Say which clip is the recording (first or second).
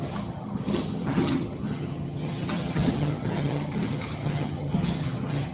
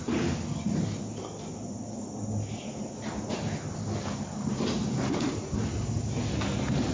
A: second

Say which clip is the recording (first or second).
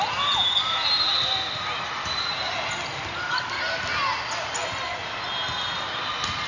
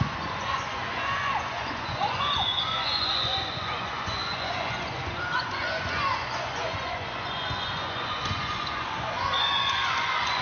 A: first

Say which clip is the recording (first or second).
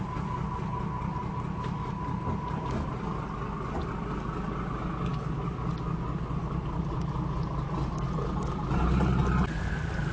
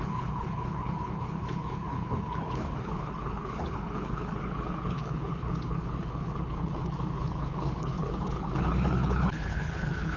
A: first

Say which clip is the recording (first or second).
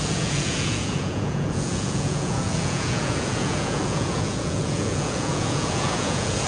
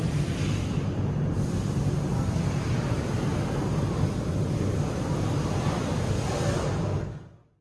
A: second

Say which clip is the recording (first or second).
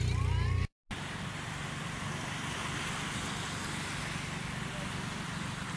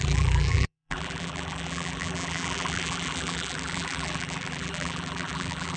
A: first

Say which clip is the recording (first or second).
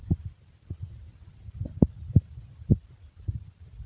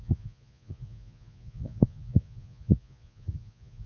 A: first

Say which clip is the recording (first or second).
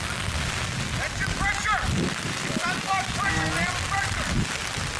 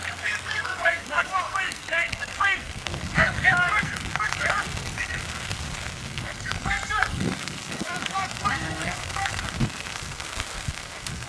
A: first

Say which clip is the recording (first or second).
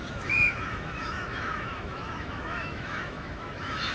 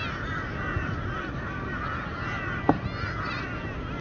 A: second